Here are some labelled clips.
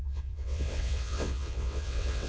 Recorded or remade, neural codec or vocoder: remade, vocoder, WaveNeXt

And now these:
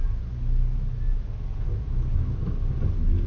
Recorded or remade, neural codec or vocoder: recorded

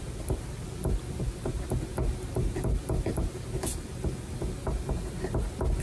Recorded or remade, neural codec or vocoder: recorded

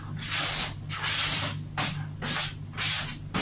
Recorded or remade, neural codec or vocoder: recorded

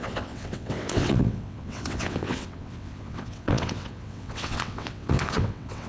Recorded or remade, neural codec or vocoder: remade, vocoder, WaveNeXt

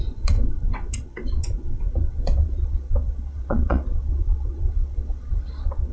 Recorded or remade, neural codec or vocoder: remade, vocoder, WaveNeXt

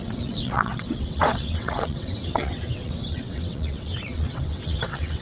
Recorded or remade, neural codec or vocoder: remade, vocoder, WaveNeXt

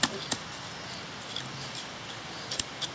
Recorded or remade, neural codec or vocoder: recorded